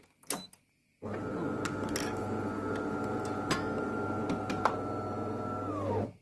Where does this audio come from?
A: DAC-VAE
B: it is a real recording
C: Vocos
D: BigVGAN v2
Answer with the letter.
B